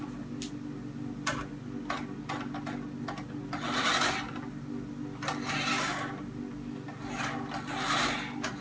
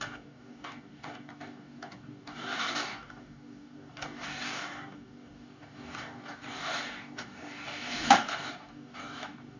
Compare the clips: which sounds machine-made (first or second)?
second